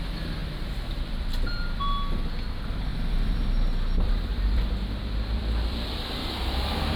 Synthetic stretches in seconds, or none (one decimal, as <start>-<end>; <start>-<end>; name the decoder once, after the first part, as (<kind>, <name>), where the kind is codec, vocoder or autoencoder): 0.4-1.8 (vocoder, BigVGAN v2); 2.9-6.3